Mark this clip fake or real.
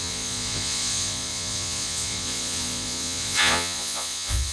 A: fake